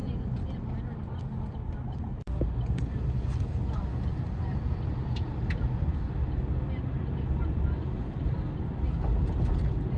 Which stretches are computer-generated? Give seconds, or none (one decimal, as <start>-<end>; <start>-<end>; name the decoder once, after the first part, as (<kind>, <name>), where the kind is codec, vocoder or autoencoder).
none